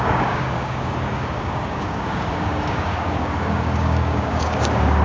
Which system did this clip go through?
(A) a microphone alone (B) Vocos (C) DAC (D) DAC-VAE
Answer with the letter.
C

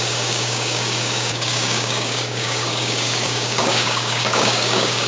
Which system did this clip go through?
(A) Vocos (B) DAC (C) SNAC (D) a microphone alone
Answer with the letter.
B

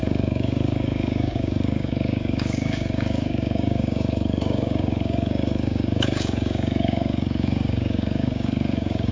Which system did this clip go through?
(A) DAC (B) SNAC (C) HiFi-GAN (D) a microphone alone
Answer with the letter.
A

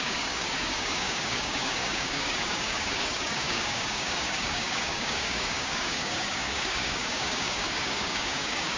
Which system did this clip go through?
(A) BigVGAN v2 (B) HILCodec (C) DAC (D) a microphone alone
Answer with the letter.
C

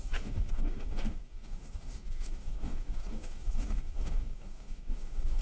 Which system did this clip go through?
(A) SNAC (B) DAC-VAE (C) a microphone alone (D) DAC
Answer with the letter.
D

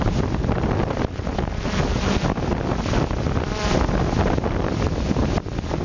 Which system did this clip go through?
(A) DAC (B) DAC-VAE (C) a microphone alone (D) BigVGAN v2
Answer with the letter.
C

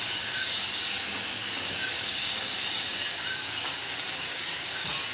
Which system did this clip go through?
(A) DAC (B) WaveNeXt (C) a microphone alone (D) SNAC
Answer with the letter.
A